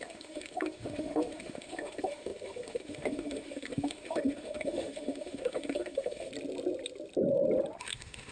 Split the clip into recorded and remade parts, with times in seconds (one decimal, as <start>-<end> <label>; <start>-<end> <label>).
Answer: 0.0-6.3 remade; 6.3-7.8 recorded; 7.8-8.3 remade